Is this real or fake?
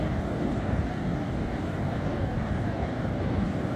fake